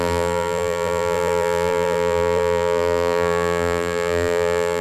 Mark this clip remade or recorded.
remade